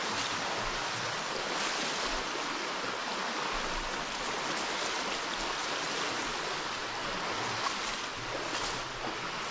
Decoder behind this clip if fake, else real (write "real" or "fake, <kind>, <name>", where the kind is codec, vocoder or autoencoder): real